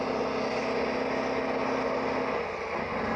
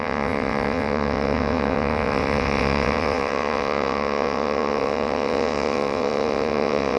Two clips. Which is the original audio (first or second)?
first